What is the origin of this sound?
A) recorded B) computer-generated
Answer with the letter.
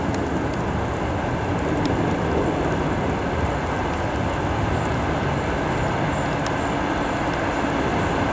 A